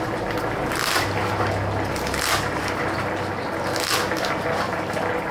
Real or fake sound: real